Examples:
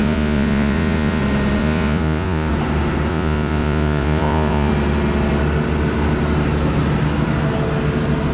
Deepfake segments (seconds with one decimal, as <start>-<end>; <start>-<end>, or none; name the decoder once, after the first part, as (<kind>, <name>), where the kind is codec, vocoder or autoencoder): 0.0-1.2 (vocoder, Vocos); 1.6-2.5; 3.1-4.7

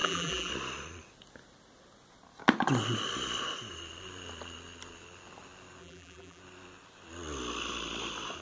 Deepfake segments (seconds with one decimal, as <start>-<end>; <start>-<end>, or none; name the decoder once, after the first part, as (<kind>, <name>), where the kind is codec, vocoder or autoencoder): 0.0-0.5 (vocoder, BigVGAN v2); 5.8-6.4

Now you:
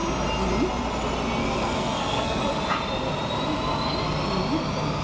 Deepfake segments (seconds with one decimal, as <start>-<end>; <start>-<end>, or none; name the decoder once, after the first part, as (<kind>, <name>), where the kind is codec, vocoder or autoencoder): 1.4-2.4 (codec, SNAC)

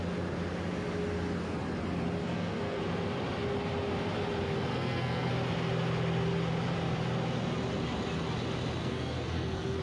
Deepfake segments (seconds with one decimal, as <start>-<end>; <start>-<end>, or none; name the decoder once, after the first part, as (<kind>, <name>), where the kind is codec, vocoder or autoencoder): 2.2-2.8 (codec, SNAC); 4.7-5.3; 8.8-9.8

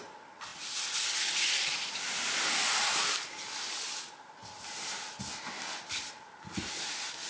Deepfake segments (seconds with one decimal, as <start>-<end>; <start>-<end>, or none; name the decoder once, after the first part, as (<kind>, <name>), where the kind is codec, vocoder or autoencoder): none

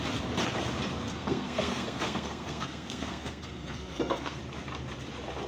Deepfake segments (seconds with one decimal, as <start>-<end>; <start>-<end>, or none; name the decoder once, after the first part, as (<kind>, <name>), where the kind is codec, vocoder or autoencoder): 1.1-4.4 (codec, SNAC)

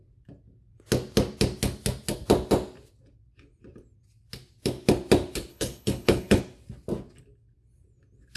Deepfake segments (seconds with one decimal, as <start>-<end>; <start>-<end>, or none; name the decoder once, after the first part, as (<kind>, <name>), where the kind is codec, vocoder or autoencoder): 5.5-6.4 (codec, HILCodec)